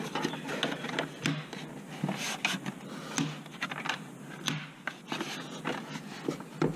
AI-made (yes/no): no